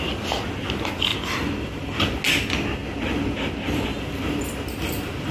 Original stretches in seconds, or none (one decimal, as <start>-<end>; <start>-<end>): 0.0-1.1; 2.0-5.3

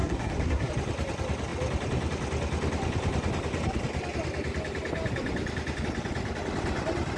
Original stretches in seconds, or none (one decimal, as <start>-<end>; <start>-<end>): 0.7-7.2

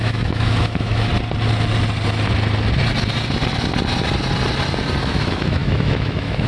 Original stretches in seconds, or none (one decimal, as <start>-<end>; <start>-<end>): 1.1-5.0